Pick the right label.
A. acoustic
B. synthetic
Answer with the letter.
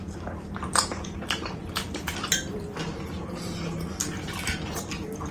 A